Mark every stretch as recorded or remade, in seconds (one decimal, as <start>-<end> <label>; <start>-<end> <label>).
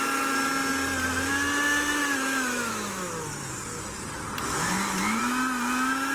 0.0-2.0 recorded; 2.0-3.1 remade; 3.1-4.5 recorded; 4.5-5.2 remade; 5.2-6.1 recorded